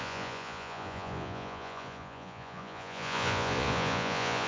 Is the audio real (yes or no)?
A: no